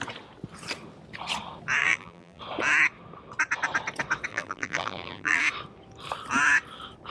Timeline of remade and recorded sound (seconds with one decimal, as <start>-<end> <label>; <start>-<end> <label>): 0.0-1.8 recorded; 1.8-2.4 remade; 2.4-4.3 recorded; 4.3-5.4 remade; 5.4-7.1 recorded

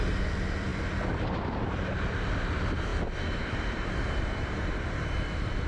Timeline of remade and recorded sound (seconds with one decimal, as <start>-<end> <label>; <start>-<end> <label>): 0.0-5.7 remade

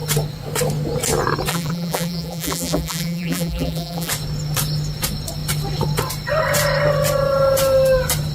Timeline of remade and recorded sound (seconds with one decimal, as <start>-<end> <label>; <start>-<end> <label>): 0.0-1.5 recorded; 1.5-4.1 remade; 4.1-8.3 recorded

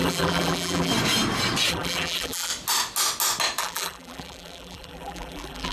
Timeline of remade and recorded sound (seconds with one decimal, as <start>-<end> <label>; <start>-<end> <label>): 0.0-0.9 remade; 0.9-1.7 recorded; 1.7-2.5 remade; 2.5-3.6 recorded; 3.6-5.7 remade

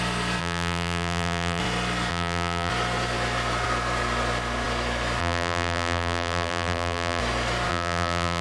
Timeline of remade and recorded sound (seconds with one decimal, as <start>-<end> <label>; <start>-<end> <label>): 0.0-0.4 recorded; 0.4-1.6 remade; 1.6-2.1 recorded; 2.1-2.7 remade; 2.7-5.2 recorded; 5.2-7.2 remade; 7.2-7.7 recorded; 7.7-8.4 remade

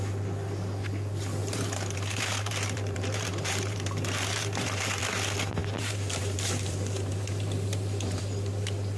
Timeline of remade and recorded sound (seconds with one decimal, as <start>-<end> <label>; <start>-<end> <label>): 0.0-1.4 recorded; 1.4-5.0 remade; 5.0-5.6 recorded; 5.6-8.2 remade; 8.2-9.0 recorded

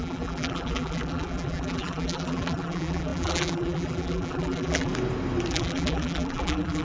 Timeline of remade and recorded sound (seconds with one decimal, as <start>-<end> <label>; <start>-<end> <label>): 0.0-4.9 remade; 4.9-5.5 recorded; 5.5-6.8 remade

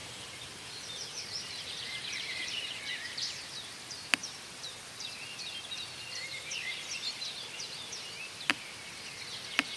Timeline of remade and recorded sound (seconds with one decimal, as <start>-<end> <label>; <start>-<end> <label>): 0.0-3.3 remade; 3.3-9.8 recorded